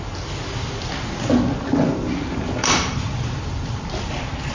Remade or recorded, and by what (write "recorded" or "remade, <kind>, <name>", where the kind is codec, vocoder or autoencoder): recorded